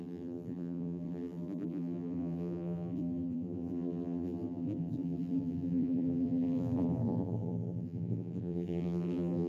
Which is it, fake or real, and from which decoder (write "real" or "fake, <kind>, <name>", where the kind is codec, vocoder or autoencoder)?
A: fake, vocoder, BigVGAN v2